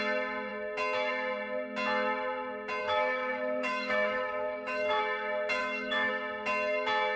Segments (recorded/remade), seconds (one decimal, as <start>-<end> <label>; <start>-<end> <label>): 0.0-2.8 recorded; 2.8-5.0 remade; 5.0-5.6 recorded; 5.6-6.1 remade; 6.1-7.2 recorded